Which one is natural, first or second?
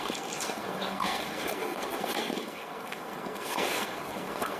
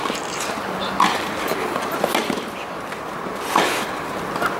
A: second